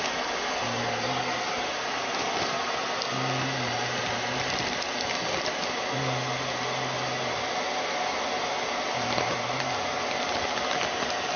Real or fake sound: real